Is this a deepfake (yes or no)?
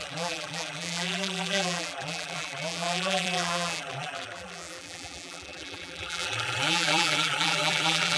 yes